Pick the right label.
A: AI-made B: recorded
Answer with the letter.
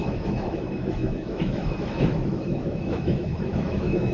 A